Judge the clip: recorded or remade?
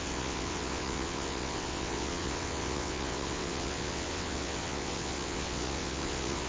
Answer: remade